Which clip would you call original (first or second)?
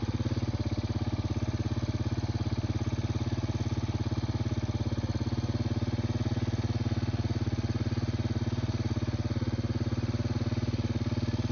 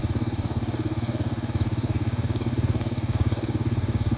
first